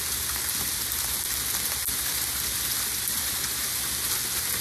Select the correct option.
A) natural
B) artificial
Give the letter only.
A